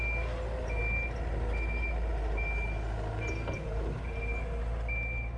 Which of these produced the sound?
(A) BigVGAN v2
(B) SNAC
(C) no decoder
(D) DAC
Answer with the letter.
C